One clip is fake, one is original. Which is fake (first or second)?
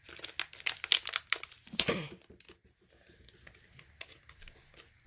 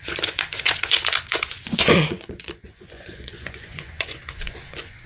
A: second